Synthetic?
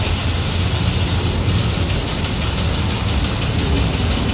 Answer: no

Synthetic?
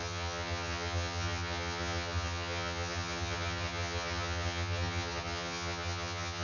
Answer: yes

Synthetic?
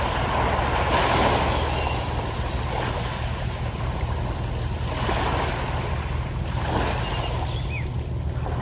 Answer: no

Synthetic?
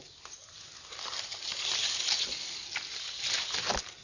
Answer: no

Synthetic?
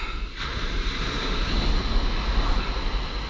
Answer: no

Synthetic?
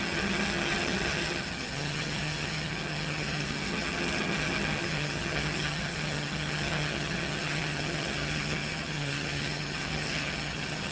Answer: yes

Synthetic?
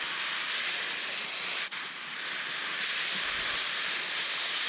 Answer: no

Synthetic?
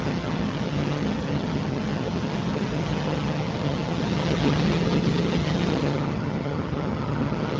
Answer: yes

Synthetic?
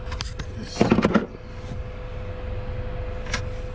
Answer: no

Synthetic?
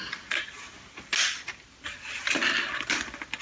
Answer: no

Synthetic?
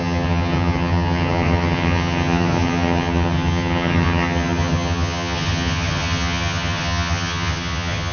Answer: yes